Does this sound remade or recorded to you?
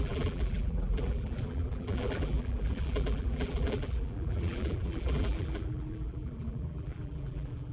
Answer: remade